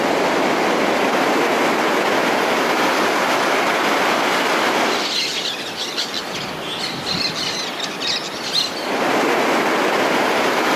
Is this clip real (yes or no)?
yes